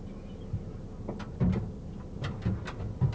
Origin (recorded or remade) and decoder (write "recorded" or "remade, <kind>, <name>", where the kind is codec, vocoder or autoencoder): recorded